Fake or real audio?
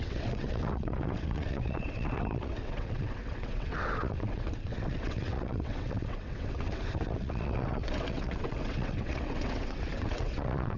fake